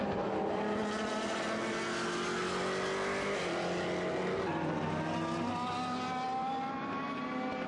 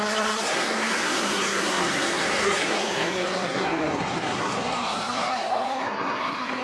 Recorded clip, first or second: first